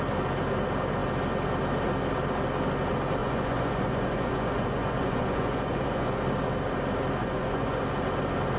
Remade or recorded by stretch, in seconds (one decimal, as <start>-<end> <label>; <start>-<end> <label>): 0.0-3.2 recorded; 3.2-6.2 remade; 6.2-7.2 recorded; 7.2-7.8 remade; 7.8-8.6 recorded